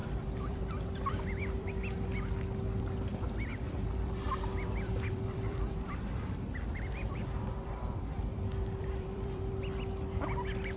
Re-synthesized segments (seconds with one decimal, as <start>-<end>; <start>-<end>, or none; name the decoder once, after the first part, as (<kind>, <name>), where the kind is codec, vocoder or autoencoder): 0.0-1.7 (vocoder, BigVGAN v2); 3.1-6.0; 7.2-9.5

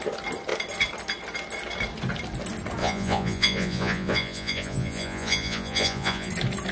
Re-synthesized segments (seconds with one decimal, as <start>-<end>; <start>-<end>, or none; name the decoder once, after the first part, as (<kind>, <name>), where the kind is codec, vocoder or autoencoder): 2.8-6.3 (vocoder, Vocos)

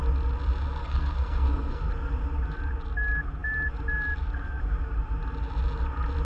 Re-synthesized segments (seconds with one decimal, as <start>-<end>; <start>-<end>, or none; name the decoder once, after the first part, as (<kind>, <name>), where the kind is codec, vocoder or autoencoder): 0.8-1.9 (codec, SNAC)

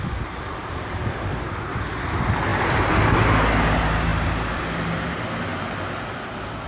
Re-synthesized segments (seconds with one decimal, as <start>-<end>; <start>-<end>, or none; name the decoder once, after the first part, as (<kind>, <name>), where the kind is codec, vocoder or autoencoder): none

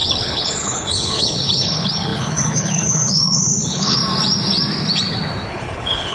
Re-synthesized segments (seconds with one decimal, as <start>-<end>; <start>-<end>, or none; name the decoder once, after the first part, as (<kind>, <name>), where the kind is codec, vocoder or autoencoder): 0.0-4.0 (codec, HILCodec); 5.5-6.1

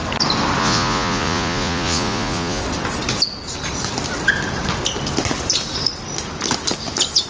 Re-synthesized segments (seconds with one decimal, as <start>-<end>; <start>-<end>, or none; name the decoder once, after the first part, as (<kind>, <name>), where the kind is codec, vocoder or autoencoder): 0.6-2.6 (vocoder, Vocos)